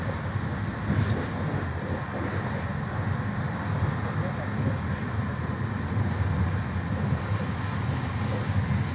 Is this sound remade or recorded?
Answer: recorded